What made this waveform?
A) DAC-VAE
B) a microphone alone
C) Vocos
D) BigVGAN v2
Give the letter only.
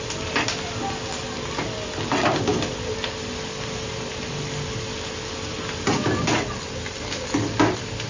B